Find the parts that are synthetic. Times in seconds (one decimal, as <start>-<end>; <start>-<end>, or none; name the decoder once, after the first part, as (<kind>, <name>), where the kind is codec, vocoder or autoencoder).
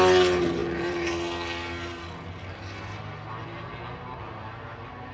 none